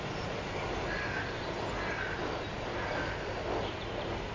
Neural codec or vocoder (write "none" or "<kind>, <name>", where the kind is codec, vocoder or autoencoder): none